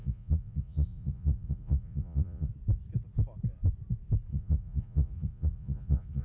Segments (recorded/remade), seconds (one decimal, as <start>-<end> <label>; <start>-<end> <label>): 0.0-2.5 remade; 2.5-4.3 recorded; 4.3-6.2 remade